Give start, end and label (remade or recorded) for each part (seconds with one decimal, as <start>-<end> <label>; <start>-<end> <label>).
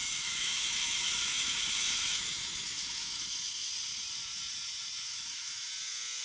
0.0-3.7 remade; 3.7-5.1 recorded; 5.1-5.7 remade; 5.7-6.2 recorded